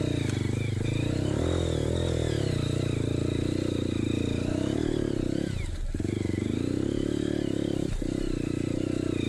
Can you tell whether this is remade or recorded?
recorded